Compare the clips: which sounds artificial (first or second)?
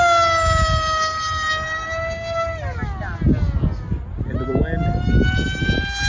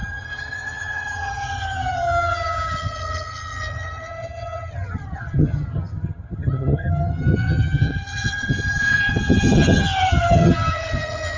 second